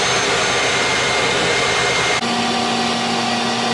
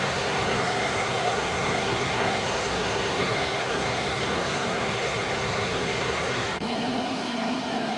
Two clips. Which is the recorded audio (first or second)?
first